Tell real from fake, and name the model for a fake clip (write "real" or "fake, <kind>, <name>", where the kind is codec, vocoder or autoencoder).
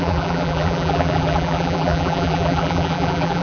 fake, vocoder, BigVGAN v2